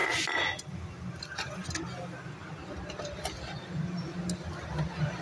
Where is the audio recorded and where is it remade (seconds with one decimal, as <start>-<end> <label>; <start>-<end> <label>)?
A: 0.0-5.2 recorded